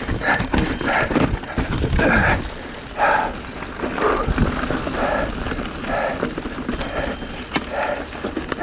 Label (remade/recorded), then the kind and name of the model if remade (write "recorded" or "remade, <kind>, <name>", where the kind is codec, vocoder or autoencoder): recorded